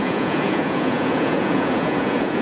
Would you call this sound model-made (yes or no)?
yes